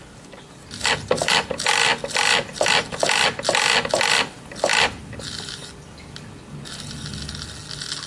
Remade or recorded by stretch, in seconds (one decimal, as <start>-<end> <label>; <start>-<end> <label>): 0.0-8.1 recorded